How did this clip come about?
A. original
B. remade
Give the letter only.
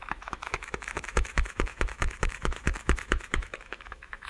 B